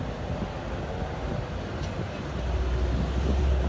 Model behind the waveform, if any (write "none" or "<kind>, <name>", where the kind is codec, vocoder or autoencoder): none